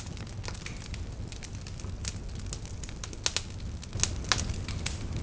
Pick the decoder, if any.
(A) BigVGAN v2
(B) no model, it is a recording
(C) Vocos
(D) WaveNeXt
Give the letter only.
B